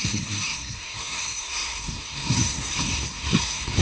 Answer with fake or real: fake